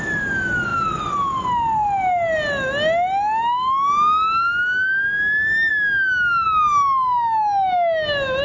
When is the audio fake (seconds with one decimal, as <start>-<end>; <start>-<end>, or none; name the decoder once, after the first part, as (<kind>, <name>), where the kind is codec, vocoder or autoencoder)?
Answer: none